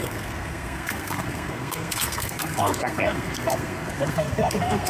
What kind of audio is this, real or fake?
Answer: fake